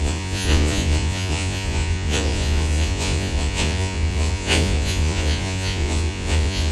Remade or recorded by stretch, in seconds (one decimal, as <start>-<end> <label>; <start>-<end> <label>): 0.0-6.7 remade